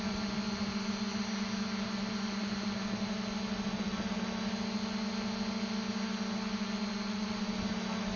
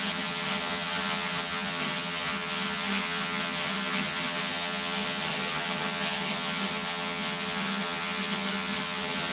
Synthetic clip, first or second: second